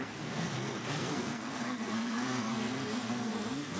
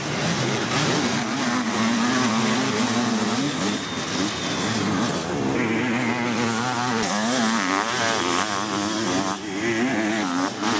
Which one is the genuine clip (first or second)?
second